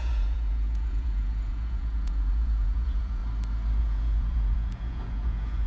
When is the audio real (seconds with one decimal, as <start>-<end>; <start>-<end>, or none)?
3.2-3.8

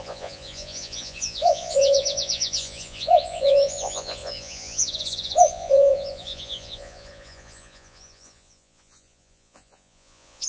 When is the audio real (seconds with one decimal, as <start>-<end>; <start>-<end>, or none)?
none

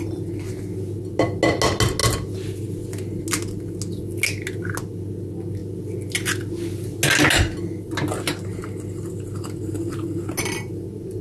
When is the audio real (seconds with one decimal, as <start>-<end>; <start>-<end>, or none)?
0.0-11.2

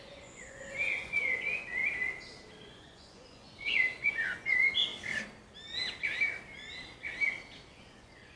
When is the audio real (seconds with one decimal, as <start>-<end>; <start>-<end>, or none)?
1.8-2.6; 4.9-7.7

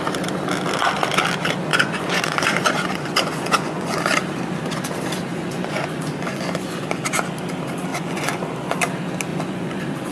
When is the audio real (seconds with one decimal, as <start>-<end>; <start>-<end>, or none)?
0.0-1.7; 4.0-5.3; 7.0-7.9; 8.4-9.3

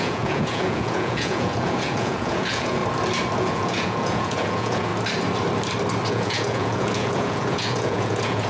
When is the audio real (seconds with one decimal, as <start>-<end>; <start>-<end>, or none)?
2.8-3.4; 4.9-6.1